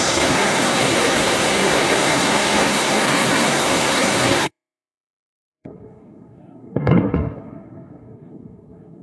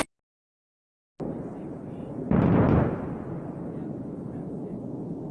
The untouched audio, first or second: second